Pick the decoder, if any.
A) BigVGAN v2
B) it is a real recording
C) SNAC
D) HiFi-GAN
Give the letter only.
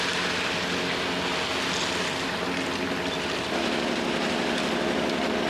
B